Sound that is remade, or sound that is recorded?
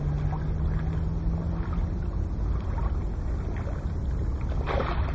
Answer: recorded